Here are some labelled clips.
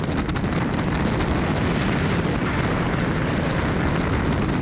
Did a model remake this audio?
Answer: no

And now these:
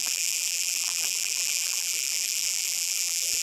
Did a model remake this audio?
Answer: yes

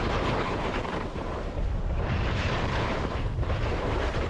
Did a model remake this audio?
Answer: yes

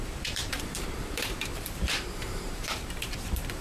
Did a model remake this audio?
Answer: yes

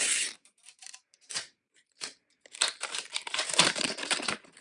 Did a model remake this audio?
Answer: yes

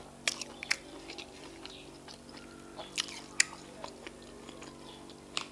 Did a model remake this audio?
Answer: no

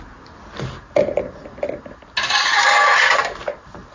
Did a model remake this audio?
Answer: no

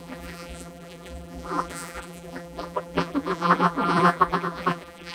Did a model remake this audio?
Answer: yes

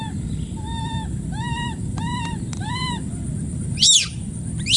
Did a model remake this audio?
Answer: yes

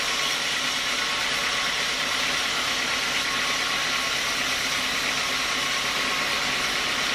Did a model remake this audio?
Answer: no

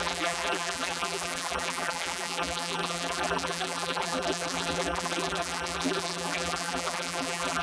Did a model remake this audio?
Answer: yes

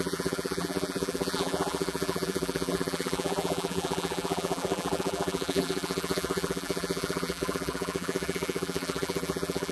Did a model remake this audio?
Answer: yes